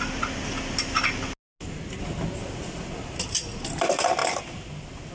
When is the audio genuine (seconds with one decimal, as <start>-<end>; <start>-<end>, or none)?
0.0-5.1